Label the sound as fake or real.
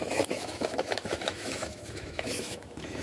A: fake